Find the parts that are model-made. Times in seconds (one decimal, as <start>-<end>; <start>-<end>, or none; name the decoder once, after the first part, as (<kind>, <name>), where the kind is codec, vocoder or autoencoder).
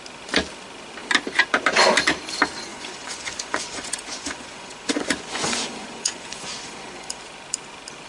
2.7-7.2 (vocoder, Vocos)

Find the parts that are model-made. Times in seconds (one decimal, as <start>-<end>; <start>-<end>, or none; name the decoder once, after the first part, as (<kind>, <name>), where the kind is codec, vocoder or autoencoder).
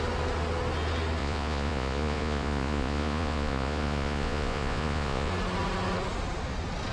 1.2-5.3 (vocoder, Vocos)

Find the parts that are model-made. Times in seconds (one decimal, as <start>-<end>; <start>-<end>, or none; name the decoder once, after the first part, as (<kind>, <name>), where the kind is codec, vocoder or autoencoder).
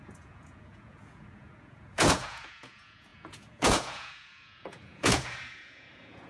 0.0-6.3 (vocoder, Vocos)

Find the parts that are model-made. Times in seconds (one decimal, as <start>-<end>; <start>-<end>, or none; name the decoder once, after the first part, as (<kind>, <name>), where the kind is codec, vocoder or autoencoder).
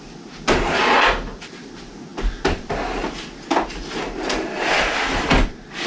none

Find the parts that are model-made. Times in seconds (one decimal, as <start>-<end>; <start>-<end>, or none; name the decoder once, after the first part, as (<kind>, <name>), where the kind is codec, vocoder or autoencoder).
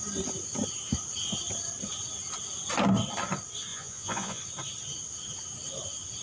3.7-4.4 (vocoder, Vocos)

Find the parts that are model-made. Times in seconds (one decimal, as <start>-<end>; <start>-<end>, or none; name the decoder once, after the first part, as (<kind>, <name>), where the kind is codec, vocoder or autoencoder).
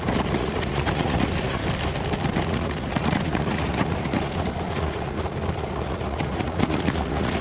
0.0-1.6 (vocoder, Vocos); 2.3-7.4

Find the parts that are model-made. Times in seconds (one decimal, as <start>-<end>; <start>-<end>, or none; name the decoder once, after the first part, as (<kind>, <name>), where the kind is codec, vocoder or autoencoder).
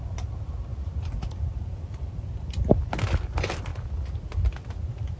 none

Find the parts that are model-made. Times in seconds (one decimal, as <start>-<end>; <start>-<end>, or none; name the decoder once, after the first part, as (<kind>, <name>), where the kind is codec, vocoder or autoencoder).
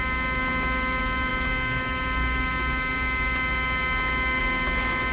none